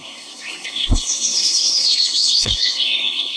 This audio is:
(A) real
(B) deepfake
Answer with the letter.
B